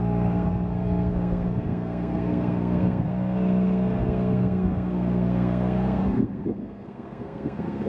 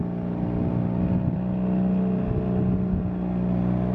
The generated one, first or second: first